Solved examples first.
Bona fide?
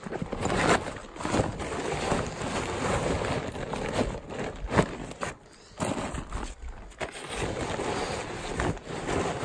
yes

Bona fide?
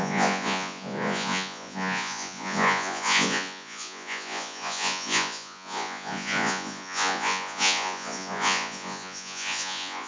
no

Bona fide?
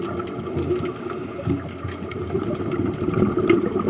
yes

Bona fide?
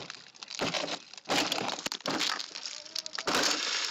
yes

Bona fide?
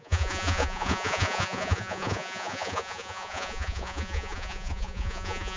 no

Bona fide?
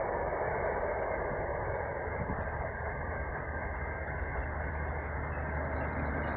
yes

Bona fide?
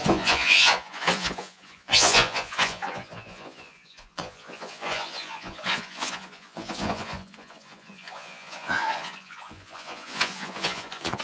no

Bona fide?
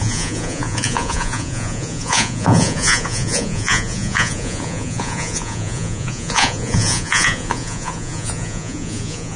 no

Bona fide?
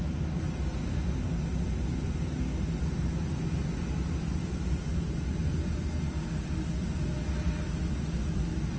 yes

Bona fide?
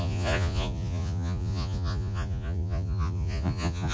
no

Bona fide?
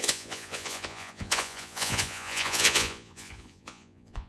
no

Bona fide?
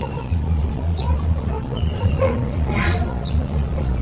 no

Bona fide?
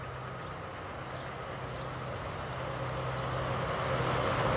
yes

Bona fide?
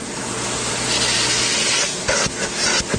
yes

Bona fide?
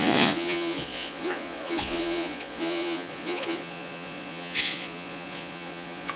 no